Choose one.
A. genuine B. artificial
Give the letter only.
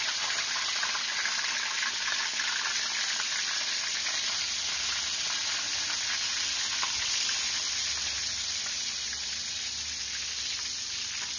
A